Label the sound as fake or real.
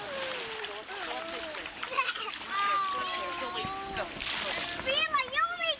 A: real